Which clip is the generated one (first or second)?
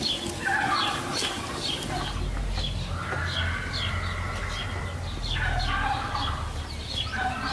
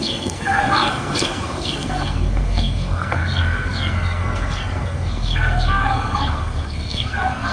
second